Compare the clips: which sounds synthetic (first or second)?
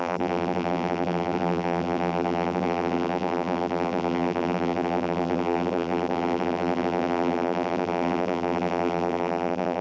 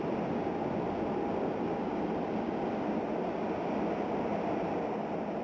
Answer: first